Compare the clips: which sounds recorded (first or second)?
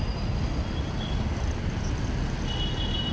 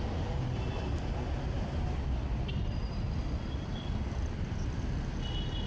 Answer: first